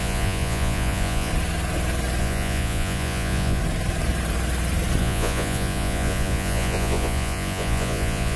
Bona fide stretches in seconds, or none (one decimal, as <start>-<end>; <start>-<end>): 1.3-2.2; 3.6-5.0